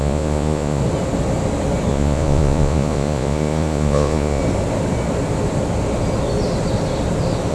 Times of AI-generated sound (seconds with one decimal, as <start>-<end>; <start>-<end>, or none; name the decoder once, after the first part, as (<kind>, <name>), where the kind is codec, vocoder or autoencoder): 0.0-0.8 (vocoder, Vocos); 1.9-4.4